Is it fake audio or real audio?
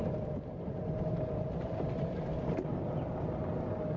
real